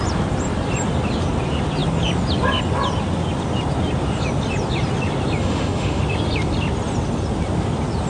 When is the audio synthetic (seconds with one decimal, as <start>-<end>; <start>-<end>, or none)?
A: 5.4-6.0